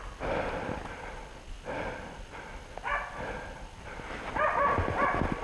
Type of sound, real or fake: real